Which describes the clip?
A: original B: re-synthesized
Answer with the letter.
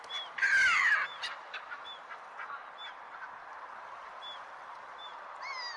A